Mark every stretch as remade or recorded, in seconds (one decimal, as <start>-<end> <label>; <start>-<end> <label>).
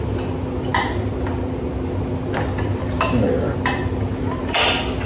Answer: 0.0-5.1 recorded